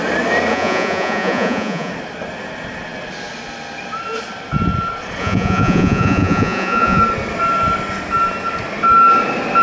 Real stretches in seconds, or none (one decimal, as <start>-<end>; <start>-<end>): 0.0-0.5; 1.9-5.2; 7.0-9.6